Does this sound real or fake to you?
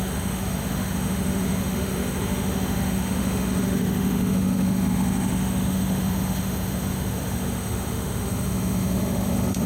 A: fake